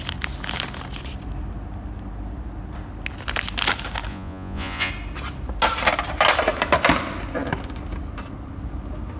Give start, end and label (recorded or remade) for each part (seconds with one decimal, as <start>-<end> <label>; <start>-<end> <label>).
0.0-4.1 recorded; 4.1-4.9 remade; 4.9-9.2 recorded